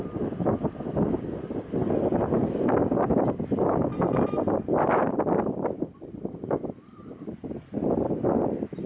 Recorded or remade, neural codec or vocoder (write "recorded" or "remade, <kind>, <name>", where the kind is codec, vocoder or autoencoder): recorded